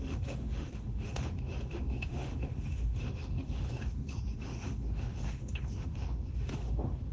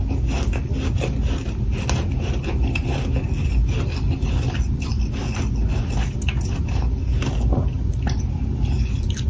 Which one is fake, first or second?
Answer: first